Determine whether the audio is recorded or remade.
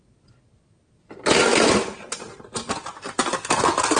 recorded